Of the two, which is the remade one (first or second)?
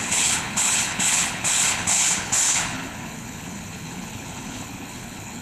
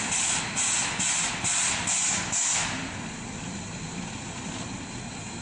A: first